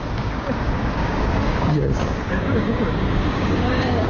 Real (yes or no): no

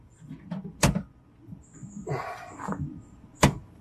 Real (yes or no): yes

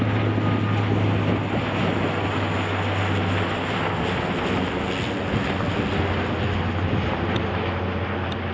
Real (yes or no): yes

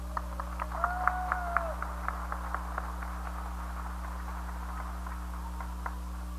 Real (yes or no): yes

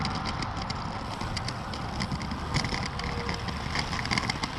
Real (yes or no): yes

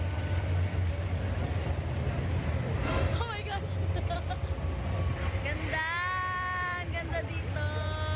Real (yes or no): yes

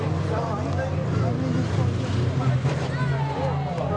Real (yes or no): yes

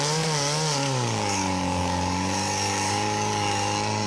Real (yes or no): no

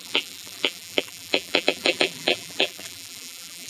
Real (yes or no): no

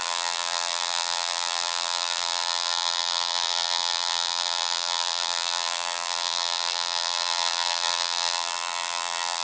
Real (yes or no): no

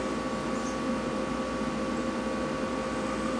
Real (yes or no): yes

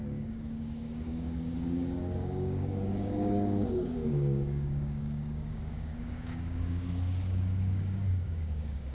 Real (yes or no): no